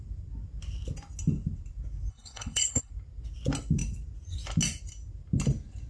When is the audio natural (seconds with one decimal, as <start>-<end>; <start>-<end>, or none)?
0.0-2.1; 2.9-5.9